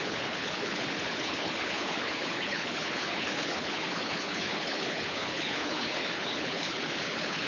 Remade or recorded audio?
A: remade